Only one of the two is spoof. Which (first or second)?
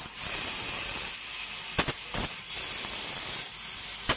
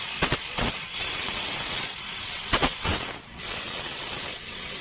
second